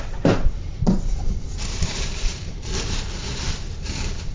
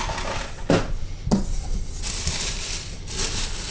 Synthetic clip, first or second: first